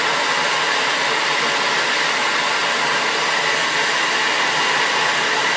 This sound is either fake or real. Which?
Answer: real